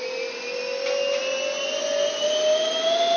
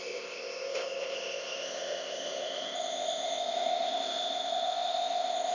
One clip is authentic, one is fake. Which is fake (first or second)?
second